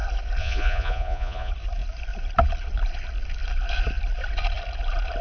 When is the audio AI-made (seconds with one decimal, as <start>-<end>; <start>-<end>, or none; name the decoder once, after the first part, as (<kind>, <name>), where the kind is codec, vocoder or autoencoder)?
0.4-1.5 (vocoder, Vocos)